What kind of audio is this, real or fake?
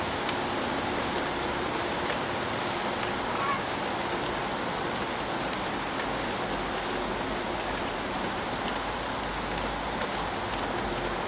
real